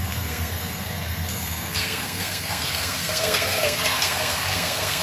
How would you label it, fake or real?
fake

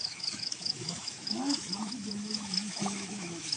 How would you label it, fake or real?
fake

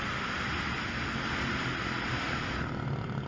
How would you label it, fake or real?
real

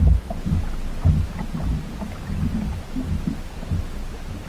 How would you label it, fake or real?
real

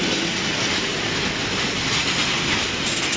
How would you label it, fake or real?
real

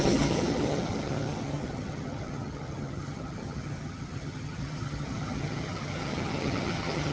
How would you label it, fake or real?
fake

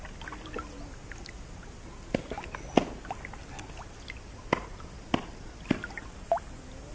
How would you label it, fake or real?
real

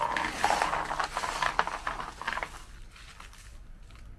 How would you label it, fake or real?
real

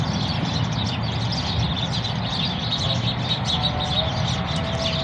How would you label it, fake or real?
real